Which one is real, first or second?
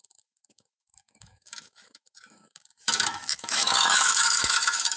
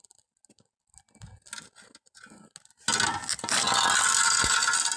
second